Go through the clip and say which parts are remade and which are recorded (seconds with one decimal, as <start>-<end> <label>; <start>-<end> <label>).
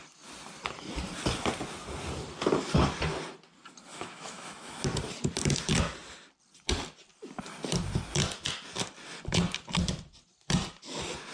0.0-3.9 recorded; 3.9-4.8 remade; 4.8-11.3 recorded